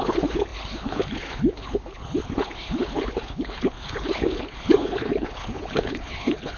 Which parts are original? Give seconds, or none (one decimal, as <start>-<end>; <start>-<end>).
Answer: none